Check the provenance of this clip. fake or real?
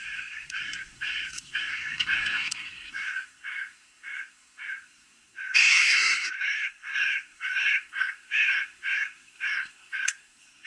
fake